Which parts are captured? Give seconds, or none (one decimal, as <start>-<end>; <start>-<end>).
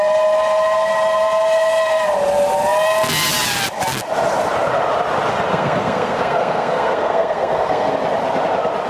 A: 0.0-5.5; 7.9-8.9